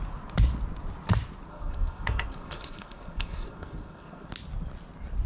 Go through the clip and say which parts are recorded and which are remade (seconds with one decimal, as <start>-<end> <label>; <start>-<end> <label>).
0.0-1.5 recorded; 1.5-4.3 remade; 4.3-5.3 recorded